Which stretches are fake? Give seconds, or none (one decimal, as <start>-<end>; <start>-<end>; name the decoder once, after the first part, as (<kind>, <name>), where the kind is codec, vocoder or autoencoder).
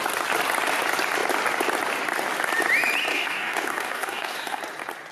3.1-4.6 (codec, DAC)